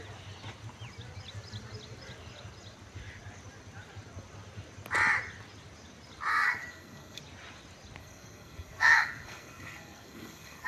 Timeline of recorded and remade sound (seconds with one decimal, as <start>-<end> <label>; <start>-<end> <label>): 0.0-6.3 recorded; 6.3-7.2 remade; 7.2-8.0 recorded; 8.0-10.7 remade